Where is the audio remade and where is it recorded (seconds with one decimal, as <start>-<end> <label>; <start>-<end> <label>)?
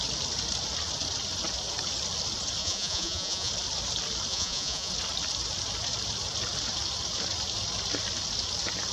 0.0-2.6 recorded; 2.6-3.5 remade; 3.5-4.3 recorded; 4.3-4.9 remade; 4.9-8.9 recorded